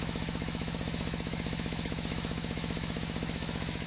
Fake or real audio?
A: fake